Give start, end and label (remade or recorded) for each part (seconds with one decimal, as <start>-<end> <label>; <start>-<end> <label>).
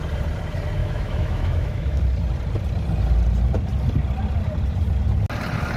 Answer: 0.0-0.8 recorded; 0.8-2.0 remade; 2.0-5.8 recorded